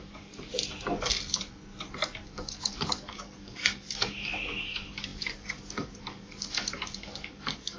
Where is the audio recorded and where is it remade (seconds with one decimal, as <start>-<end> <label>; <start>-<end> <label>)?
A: 0.0-0.5 remade; 0.5-2.3 recorded; 2.3-7.8 remade